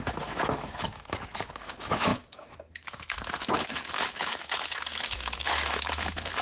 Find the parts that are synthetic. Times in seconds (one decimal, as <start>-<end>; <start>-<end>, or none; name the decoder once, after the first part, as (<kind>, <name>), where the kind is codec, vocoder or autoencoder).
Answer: 0.0-6.4 (autoencoder, DAC-VAE)